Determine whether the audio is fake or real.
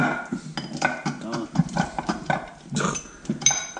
real